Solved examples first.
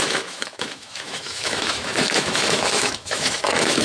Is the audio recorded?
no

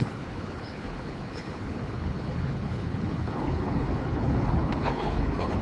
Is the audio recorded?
no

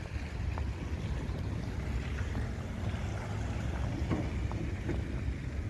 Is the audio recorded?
yes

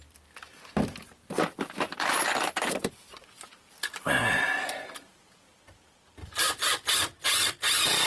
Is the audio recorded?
yes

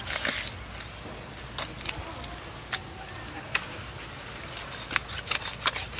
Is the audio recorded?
yes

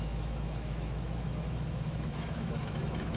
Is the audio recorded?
no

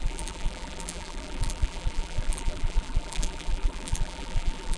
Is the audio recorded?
no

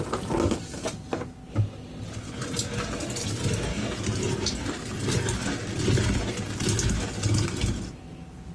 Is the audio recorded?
yes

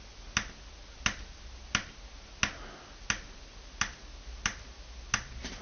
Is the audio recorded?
yes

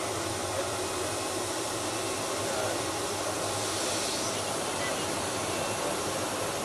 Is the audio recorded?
yes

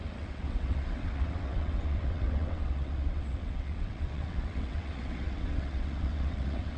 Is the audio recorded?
no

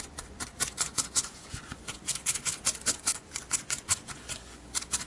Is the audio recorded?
no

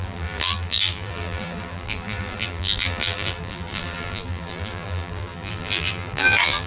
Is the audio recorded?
no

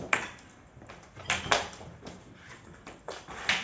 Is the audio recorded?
yes